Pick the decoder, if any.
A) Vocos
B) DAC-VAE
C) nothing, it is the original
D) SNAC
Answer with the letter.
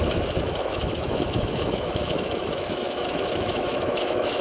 B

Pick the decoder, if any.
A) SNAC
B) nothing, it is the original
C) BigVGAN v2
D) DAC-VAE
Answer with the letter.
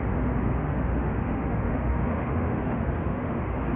D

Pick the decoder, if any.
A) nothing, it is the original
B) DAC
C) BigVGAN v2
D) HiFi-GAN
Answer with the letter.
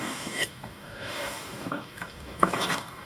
B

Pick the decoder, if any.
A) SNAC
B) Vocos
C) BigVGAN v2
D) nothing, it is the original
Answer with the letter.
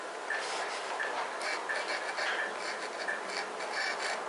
D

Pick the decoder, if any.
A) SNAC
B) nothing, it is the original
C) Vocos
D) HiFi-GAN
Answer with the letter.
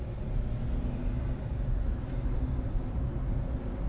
B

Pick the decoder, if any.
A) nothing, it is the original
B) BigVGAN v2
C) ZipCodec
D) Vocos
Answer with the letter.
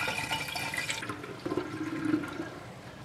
B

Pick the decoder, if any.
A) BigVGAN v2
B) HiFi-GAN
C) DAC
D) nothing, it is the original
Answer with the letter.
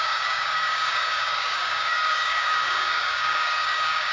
C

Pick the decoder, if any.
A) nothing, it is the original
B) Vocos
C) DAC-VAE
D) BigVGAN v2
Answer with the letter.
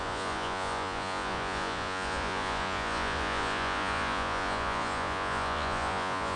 B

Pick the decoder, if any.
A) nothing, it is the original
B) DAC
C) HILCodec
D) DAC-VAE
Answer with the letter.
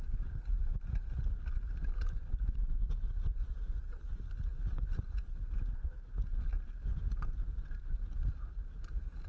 A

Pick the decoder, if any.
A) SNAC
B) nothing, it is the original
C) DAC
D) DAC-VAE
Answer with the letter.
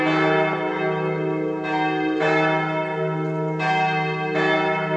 B